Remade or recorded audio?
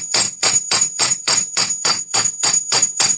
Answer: remade